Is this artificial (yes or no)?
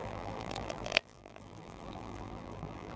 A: yes